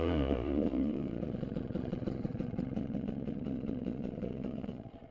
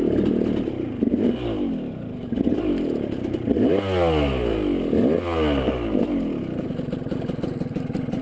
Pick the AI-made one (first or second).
first